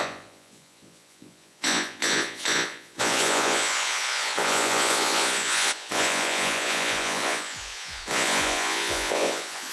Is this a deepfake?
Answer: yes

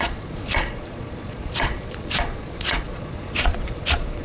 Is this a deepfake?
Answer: yes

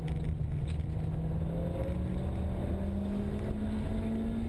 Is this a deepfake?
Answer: no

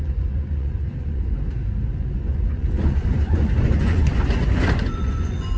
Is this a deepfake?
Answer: yes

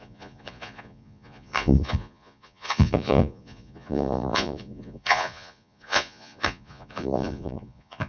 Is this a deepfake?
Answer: yes